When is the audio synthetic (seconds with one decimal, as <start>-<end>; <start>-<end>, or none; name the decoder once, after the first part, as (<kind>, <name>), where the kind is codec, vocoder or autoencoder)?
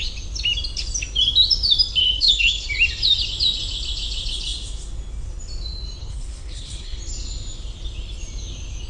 2.0-2.7 (codec, HILCodec); 6.0-7.0